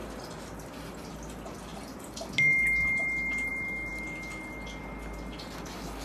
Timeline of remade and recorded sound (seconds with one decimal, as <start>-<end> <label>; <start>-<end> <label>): 0.0-6.0 recorded